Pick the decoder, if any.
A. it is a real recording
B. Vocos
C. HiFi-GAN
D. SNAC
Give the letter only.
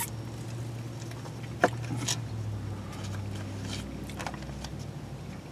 A